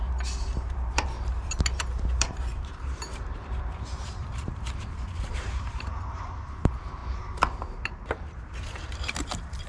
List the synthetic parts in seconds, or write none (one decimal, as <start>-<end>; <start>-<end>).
0.0-7.0; 7.8-9.7